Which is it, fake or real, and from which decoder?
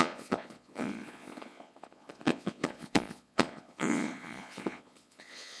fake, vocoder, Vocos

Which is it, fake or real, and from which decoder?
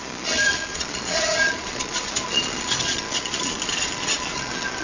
fake, vocoder, Vocos